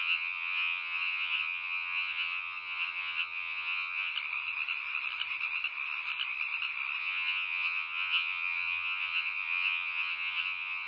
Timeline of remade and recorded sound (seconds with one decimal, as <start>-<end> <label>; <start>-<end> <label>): 0.0-4.1 remade; 4.1-7.0 recorded; 7.0-10.9 remade